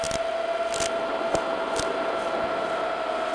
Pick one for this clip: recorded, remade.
recorded